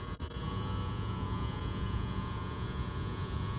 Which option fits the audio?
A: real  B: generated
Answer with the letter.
B